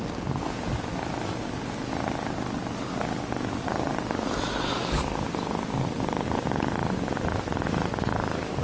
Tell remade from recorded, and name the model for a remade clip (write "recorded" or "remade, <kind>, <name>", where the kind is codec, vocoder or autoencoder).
recorded